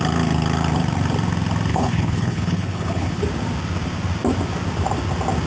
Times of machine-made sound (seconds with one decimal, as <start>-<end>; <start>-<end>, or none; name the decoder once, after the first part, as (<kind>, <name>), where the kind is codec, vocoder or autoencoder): 1.7-3.2 (codec, HILCodec)